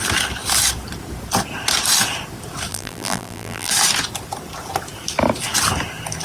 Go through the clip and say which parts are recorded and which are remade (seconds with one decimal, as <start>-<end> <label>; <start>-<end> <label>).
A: 0.0-2.7 recorded; 2.7-3.7 remade; 3.7-6.2 recorded